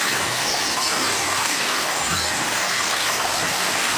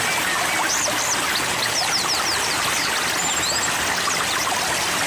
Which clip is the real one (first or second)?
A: second